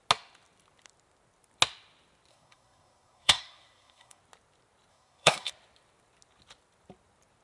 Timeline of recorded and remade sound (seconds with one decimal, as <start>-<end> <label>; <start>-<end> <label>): 0.0-2.3 recorded; 2.3-4.2 remade; 4.2-4.9 recorded; 4.9-5.5 remade; 5.5-7.4 recorded